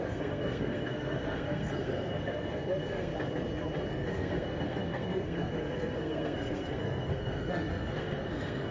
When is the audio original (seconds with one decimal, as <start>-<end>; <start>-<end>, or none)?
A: 3.1-3.9